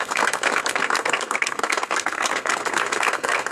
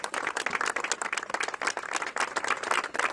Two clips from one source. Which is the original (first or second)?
second